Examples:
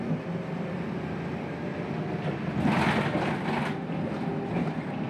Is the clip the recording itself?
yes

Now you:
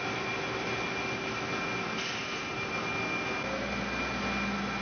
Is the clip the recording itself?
yes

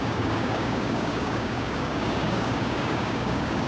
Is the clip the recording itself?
no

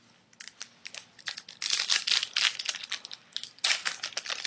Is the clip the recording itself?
yes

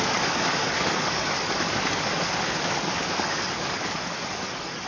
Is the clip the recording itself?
no